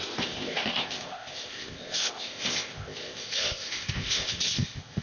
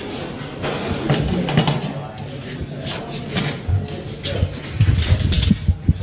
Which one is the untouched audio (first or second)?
second